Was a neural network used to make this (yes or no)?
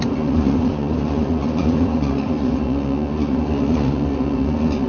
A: yes